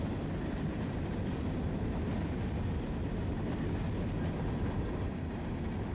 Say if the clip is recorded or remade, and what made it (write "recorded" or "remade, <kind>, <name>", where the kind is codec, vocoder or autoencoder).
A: recorded